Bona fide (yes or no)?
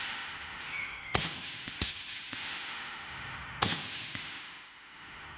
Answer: no